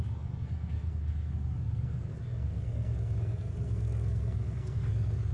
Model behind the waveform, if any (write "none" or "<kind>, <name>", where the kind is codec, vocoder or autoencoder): codec, SNAC